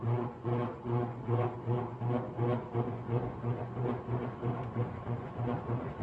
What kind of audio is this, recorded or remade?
remade